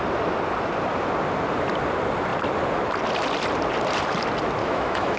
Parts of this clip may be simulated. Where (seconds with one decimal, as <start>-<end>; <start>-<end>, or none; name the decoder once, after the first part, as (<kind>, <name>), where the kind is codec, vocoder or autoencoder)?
4.6-5.2 (autoencoder, DAC-VAE)